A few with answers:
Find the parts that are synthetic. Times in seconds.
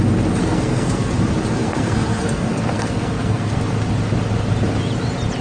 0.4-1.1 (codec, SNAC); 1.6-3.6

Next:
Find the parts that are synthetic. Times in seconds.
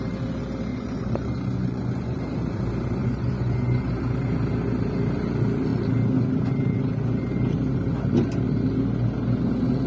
0.7-2.2 (vocoder, Vocos); 3.0-3.9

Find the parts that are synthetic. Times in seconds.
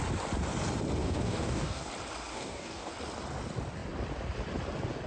1.0-1.9 (codec, DAC); 2.3-2.9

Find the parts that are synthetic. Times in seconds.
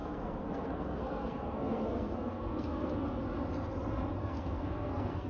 0.0-3.2 (codec, SNAC); 4.2-5.3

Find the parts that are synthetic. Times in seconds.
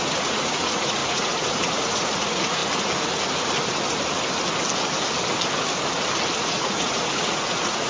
0.0-2.6 (vocoder, Vocos); 6.4-7.9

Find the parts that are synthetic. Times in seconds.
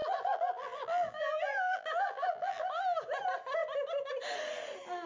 0.0-2.8 (vocoder, BigVGAN v2)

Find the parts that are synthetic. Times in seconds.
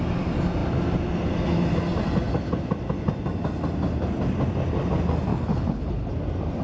5.3-6.1 (codec, HILCodec)